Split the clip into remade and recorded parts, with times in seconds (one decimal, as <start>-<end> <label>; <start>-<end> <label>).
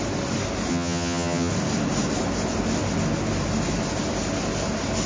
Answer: 0.0-0.7 recorded; 0.7-1.5 remade; 1.5-5.1 recorded